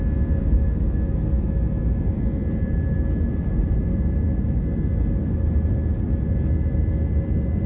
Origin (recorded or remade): recorded